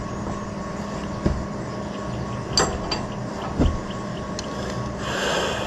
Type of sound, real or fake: real